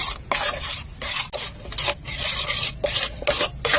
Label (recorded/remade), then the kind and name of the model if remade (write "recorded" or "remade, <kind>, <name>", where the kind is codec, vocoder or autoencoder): recorded